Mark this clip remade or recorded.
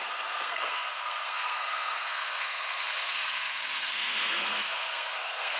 remade